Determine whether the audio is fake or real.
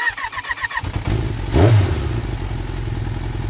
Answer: real